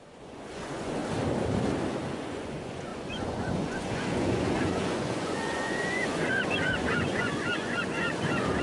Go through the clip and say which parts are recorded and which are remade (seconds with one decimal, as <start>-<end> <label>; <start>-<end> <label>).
0.0-1.0 remade; 1.0-2.1 recorded; 2.1-8.6 remade